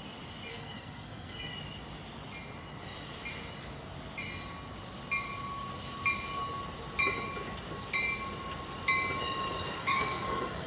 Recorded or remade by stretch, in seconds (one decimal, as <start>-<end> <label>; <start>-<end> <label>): 0.0-0.5 recorded; 0.5-1.5 remade; 1.5-9.8 recorded; 9.8-10.7 remade